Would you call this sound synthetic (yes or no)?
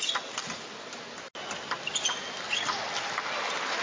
no